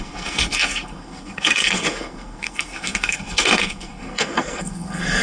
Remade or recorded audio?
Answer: remade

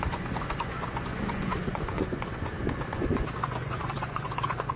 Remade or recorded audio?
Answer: remade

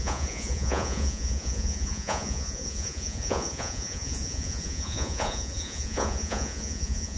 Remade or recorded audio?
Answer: remade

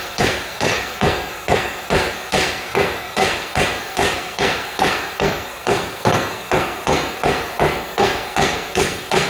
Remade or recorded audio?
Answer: remade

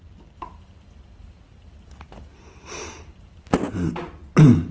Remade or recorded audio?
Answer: recorded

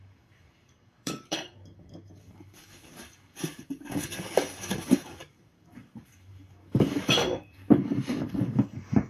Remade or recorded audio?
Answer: remade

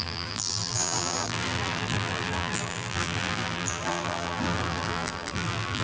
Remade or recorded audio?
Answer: remade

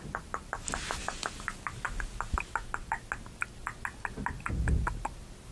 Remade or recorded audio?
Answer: recorded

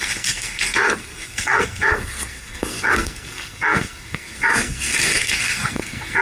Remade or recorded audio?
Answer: remade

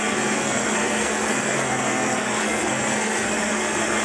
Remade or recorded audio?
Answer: remade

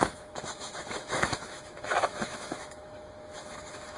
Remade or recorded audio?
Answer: remade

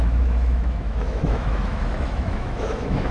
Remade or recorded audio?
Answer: remade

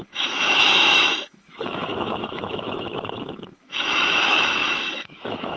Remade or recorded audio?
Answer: remade